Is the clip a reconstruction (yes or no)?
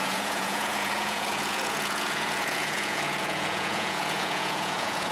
yes